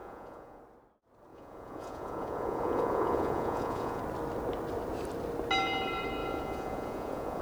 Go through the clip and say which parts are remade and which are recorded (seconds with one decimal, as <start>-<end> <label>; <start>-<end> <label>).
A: 0.0-0.6 remade; 0.6-1.3 recorded; 1.3-4.0 remade; 4.0-6.2 recorded; 6.2-7.4 remade